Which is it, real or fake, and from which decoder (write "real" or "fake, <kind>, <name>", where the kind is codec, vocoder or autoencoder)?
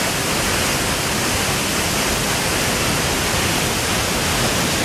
real